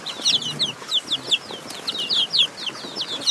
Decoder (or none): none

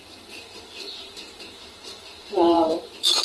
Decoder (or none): vocoder, BigVGAN v2